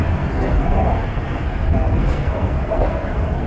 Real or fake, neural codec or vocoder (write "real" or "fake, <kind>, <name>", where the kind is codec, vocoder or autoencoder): fake, codec, SNAC